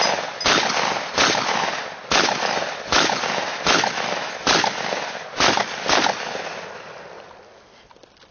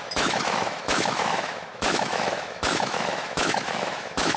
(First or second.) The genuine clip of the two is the first